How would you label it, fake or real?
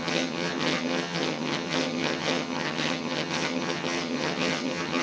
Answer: fake